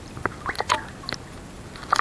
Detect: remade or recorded recorded